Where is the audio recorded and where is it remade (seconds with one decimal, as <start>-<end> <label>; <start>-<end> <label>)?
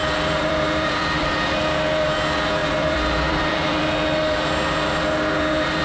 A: 0.0-1.3 remade; 1.3-2.6 recorded; 2.6-3.8 remade; 3.8-5.8 recorded